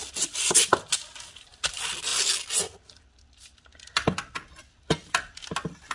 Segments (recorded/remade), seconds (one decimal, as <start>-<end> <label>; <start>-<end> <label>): 0.0-5.9 recorded